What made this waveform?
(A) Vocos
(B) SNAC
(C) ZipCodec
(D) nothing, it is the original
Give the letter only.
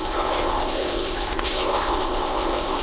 C